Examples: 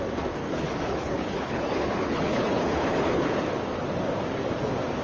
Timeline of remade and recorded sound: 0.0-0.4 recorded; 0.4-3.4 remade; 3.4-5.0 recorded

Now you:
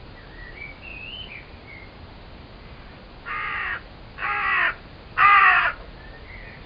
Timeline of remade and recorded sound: 0.0-6.7 recorded

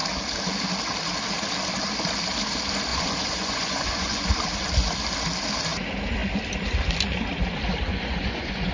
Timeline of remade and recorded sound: 0.0-2.9 recorded; 2.9-4.3 remade; 4.3-7.9 recorded; 7.9-8.7 remade

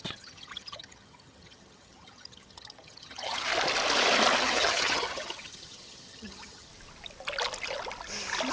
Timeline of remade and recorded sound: 0.0-3.5 remade; 3.5-4.4 recorded; 4.4-6.7 remade; 6.7-8.5 recorded

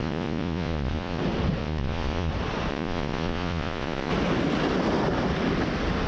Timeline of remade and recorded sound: 0.0-1.2 remade; 1.2-1.6 recorded; 1.6-2.3 remade; 2.3-2.7 recorded; 2.7-4.1 remade; 4.1-6.1 recorded

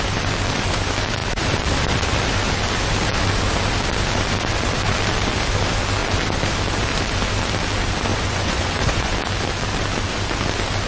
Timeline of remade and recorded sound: 0.0-8.1 recorded; 8.1-9.1 remade; 9.1-10.9 recorded

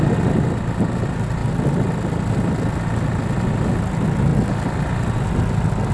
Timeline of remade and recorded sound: 0.0-5.9 recorded